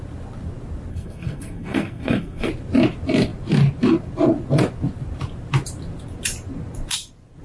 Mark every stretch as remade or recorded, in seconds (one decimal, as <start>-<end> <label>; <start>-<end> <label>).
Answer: 0.0-0.9 recorded; 0.9-2.5 remade; 2.5-7.4 recorded